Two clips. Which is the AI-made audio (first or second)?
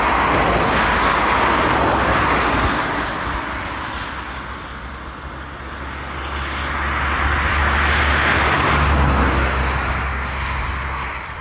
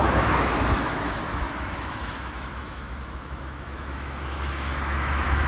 second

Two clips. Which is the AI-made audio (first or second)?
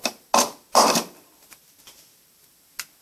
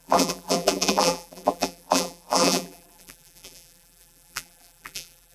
second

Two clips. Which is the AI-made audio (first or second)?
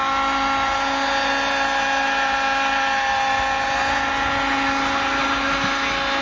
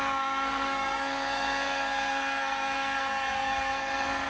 second